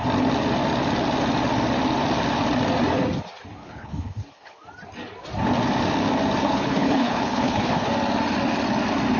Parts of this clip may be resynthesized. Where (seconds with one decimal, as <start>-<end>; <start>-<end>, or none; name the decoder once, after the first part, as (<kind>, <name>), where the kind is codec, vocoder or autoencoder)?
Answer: 3.6-4.6 (codec, HILCodec); 6.4-7.9